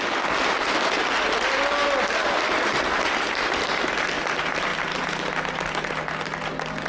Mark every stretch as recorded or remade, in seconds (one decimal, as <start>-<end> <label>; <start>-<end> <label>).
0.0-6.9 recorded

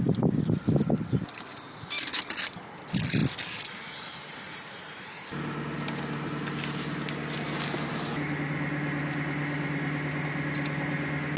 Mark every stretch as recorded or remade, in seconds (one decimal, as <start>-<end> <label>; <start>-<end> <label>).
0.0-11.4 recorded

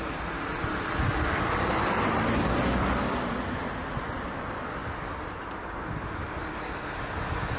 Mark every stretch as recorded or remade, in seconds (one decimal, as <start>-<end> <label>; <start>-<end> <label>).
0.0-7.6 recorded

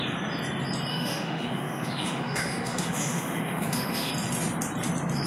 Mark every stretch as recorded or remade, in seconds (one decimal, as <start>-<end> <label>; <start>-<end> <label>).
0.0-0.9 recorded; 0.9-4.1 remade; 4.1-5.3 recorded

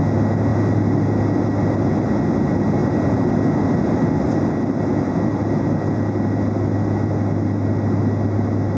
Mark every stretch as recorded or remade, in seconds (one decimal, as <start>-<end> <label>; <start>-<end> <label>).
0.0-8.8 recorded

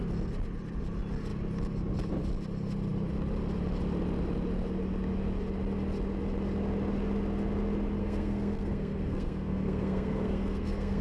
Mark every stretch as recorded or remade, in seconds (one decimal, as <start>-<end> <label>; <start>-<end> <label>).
0.0-8.0 recorded; 8.0-11.0 remade

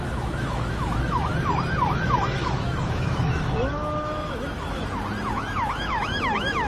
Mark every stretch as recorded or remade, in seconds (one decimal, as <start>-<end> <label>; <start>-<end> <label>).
0.0-1.3 remade; 1.3-1.9 recorded; 1.9-4.8 remade; 4.8-5.3 recorded; 5.3-6.7 remade